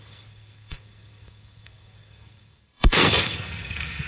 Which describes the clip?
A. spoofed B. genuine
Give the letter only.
A